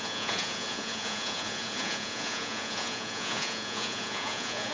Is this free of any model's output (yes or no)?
no